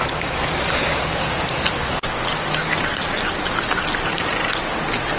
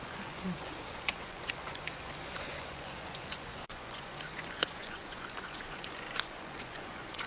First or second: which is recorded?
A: first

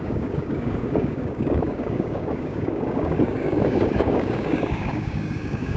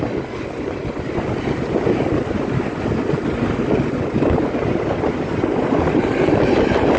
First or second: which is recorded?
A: second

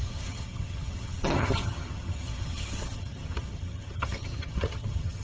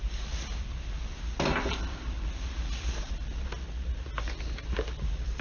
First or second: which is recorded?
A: second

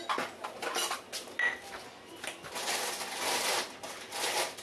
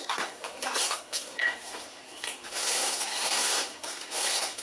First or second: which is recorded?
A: first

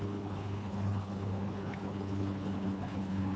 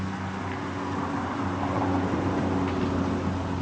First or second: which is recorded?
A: second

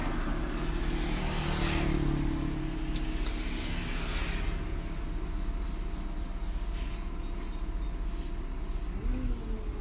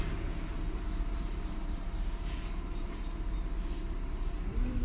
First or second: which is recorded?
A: first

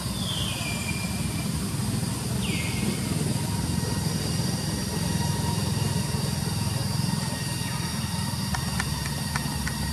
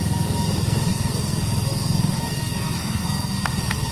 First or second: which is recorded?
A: first